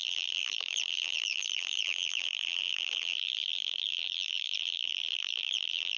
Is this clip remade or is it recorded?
remade